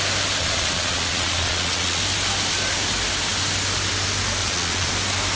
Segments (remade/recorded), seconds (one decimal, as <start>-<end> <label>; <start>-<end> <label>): 0.0-0.4 recorded; 0.4-2.0 remade; 2.0-4.4 recorded; 4.4-4.9 remade; 4.9-5.4 recorded